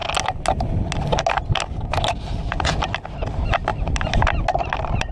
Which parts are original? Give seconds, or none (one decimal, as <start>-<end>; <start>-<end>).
0.0-5.1